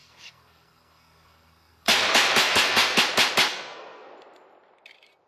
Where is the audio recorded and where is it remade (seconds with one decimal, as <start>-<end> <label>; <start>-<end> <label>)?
0.0-3.0 remade; 3.0-3.5 recorded; 3.5-4.1 remade; 4.1-5.3 recorded